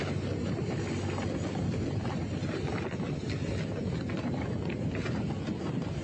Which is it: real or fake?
real